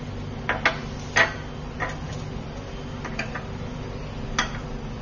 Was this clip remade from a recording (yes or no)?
no